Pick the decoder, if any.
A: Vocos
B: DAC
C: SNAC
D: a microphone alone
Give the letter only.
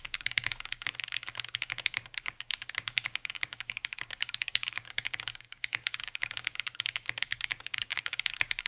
B